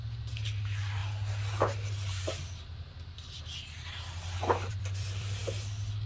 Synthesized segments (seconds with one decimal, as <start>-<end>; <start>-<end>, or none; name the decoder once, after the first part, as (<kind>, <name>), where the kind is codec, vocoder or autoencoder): 0.0-1.0 (vocoder, BigVGAN v2); 4.7-5.4